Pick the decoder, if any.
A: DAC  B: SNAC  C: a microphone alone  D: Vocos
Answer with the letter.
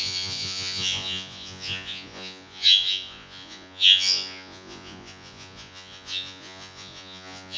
D